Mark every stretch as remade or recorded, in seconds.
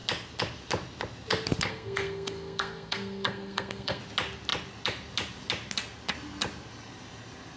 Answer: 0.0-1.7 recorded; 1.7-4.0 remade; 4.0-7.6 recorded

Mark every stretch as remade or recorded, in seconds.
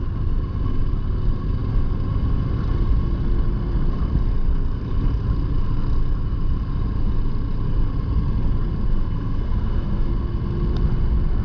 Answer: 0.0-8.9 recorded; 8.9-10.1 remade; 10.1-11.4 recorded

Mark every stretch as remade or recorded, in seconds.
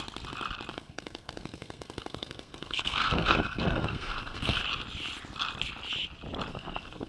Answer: 0.0-0.7 recorded; 0.7-4.6 remade; 4.6-6.5 recorded; 6.5-7.1 remade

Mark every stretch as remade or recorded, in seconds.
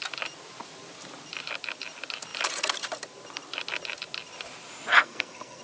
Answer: 0.0-4.9 recorded; 4.9-5.6 remade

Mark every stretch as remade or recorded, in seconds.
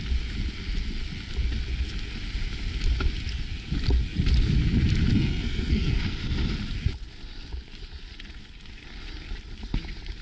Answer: 0.0-5.1 recorded; 5.1-6.2 remade; 6.2-10.2 recorded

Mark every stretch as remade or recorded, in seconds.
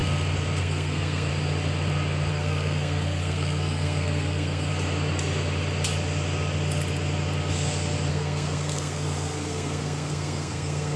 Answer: 0.0-0.6 recorded; 0.6-1.3 remade; 1.3-2.3 recorded; 2.3-4.7 remade; 4.7-8.1 recorded; 8.1-11.0 remade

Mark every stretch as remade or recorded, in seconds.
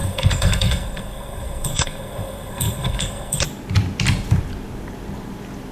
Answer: 0.0-3.4 remade; 3.4-5.7 recorded